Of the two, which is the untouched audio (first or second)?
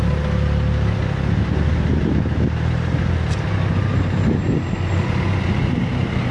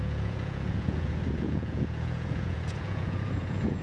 first